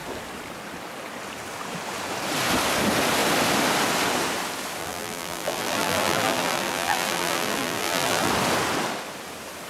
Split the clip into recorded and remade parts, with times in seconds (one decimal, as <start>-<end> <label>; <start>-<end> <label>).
0.0-4.8 recorded; 4.8-8.3 remade; 8.3-9.7 recorded